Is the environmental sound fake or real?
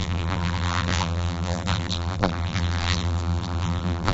fake